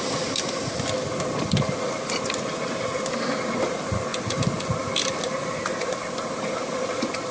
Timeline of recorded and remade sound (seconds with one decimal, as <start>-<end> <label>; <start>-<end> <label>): 0.0-7.3 recorded